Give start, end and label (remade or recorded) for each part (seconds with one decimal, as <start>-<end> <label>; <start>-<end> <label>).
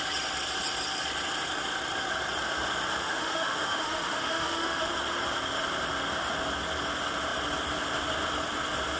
0.0-3.0 recorded; 3.0-4.9 remade; 4.9-9.0 recorded